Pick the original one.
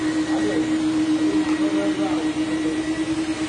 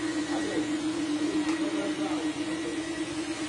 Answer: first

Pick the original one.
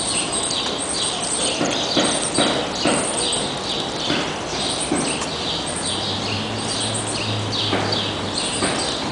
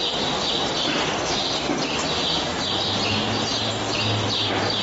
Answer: second